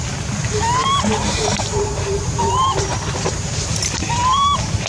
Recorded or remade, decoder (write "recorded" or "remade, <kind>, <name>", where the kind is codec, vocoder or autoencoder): remade, vocoder, BigVGAN v2